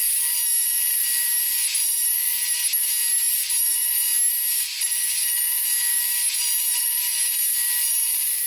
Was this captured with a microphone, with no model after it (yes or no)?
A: yes